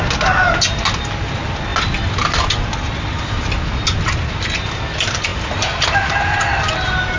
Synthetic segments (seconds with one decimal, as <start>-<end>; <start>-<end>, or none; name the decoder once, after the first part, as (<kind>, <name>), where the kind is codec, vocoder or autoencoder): none